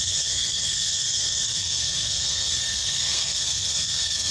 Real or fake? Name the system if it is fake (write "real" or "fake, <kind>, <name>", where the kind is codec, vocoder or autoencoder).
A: fake, codec, SNAC